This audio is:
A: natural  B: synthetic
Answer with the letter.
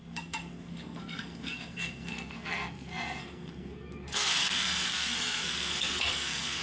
B